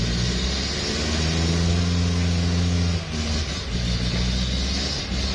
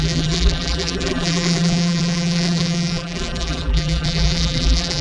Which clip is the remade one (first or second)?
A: second